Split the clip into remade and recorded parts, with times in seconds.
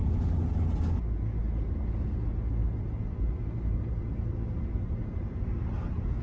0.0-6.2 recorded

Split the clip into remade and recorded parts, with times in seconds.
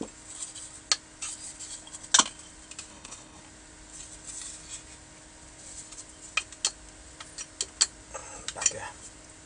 0.0-2.9 recorded; 2.9-3.4 remade; 3.4-9.5 recorded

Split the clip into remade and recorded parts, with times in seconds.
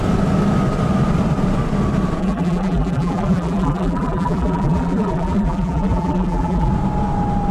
0.0-2.2 recorded; 2.2-6.7 remade; 6.7-7.5 recorded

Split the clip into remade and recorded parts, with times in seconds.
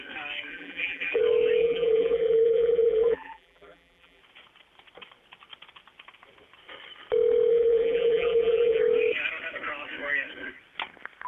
0.0-0.5 recorded; 0.5-1.2 remade; 1.2-1.6 recorded; 1.6-4.2 remade; 4.2-7.5 recorded; 7.5-8.8 remade; 8.8-11.3 recorded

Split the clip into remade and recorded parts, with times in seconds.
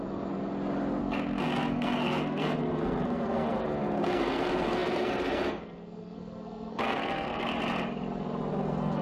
0.0-0.4 remade; 0.4-1.0 recorded; 1.0-7.5 remade; 7.5-8.6 recorded; 8.6-9.0 remade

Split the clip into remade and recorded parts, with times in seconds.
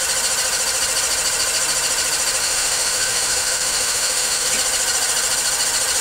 0.0-2.4 recorded; 2.4-4.5 remade; 4.5-6.0 recorded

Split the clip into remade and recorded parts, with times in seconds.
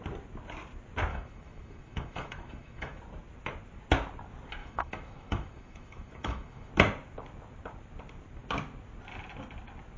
0.0-1.1 recorded; 1.1-3.0 remade; 3.0-4.6 recorded; 4.6-6.7 remade; 6.7-10.0 recorded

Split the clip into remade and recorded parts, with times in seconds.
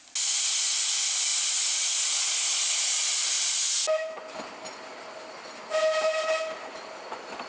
0.0-7.5 recorded